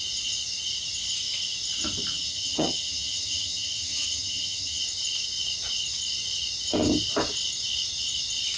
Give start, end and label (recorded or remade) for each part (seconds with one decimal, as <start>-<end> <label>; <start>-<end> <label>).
0.0-2.1 recorded; 2.1-4.8 remade; 4.8-8.6 recorded